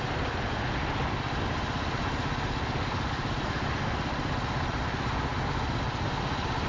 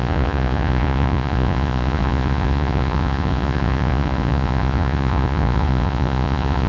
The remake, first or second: second